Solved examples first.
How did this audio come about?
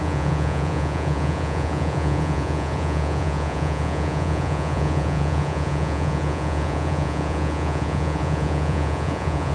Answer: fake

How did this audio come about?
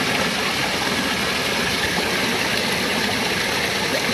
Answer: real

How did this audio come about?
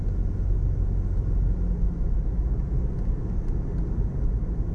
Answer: real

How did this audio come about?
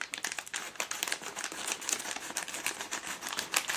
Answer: real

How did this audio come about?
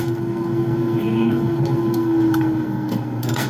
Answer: fake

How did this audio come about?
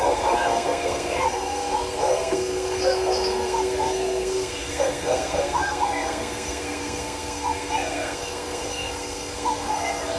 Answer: fake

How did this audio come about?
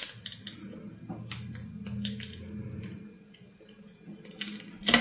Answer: real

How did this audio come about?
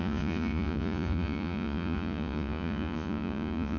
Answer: fake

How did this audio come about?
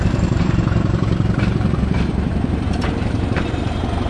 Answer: fake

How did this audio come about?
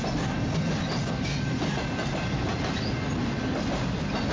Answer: real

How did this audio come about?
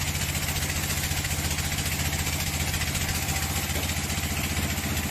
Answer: real